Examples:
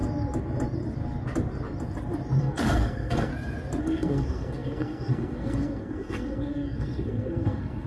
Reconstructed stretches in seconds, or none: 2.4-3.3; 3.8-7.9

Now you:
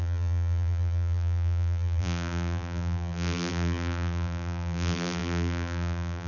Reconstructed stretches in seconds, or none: 0.0-6.3

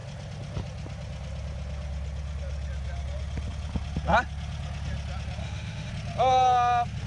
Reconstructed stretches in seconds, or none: 5.4-5.9